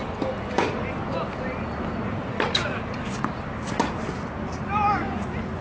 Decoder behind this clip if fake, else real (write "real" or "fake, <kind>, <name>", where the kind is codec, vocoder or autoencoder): real